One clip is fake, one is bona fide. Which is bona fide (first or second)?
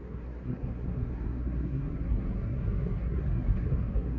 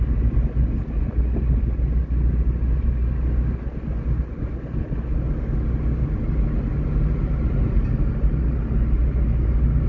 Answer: second